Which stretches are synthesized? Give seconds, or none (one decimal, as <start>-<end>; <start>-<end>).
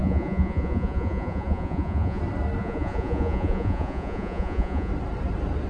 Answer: 0.0-2.2; 2.6-4.9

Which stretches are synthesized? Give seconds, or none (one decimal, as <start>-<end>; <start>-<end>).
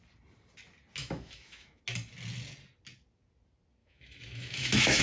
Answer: 1.0-1.8; 3.8-5.0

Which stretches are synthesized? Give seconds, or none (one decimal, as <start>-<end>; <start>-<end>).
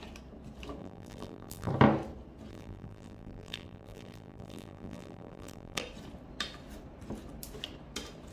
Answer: 0.8-1.7; 2.5-5.8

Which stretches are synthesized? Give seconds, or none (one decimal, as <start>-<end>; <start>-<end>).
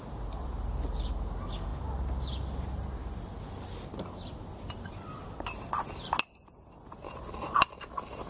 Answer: none